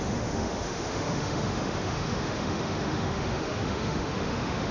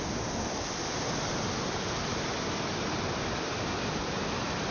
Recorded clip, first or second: second